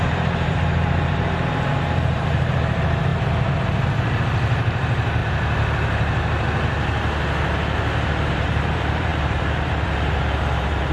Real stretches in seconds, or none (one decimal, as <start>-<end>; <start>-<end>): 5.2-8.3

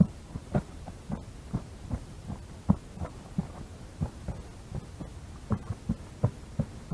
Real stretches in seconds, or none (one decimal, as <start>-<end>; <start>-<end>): 3.4-6.2

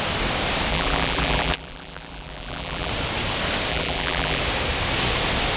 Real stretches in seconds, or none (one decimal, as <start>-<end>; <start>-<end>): 0.0-0.7; 2.9-3.7; 4.4-5.6